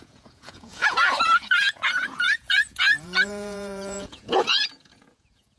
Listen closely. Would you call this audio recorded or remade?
remade